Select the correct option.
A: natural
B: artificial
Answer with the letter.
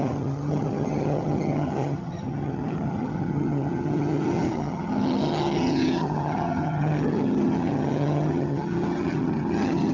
B